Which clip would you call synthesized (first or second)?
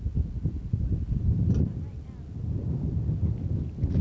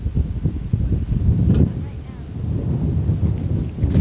first